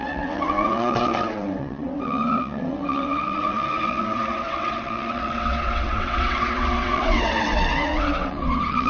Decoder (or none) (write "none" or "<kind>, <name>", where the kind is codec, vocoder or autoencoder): vocoder, WaveNeXt